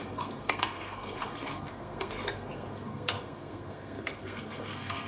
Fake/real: fake